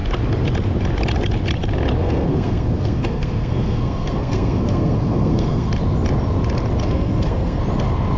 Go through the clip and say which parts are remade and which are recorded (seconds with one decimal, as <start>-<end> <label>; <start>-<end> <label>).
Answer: 0.0-2.0 recorded; 2.0-5.7 remade; 5.7-6.8 recorded; 6.8-7.6 remade; 7.6-8.2 recorded